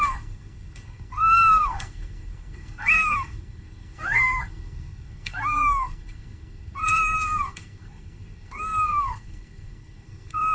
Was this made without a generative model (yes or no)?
no